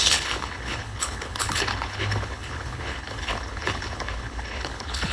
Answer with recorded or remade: remade